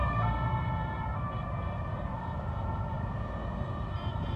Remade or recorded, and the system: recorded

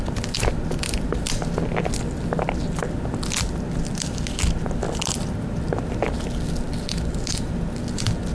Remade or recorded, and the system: recorded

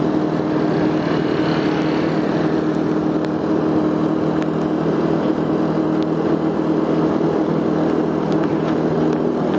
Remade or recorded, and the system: recorded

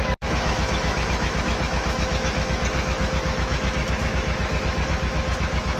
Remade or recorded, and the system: remade, autoencoder, DAC-VAE